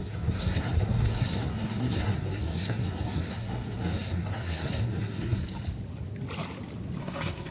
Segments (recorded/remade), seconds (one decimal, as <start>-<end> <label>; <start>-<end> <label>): 0.0-5.4 remade; 5.4-7.0 recorded; 7.0-7.5 remade